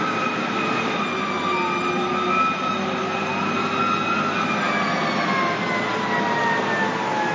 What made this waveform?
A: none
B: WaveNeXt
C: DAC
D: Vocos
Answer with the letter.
A